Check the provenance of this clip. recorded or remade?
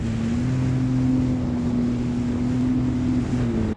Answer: recorded